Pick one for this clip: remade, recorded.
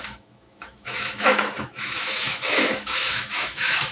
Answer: remade